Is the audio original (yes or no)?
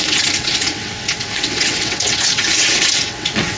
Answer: no